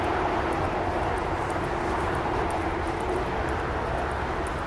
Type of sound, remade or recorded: recorded